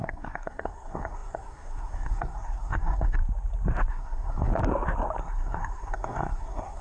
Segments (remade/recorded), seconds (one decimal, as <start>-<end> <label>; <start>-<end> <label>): 0.0-3.2 remade; 3.2-3.9 recorded; 3.9-4.5 remade; 4.5-5.2 recorded; 5.2-6.8 remade